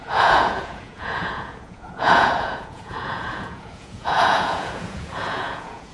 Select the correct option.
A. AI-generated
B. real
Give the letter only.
A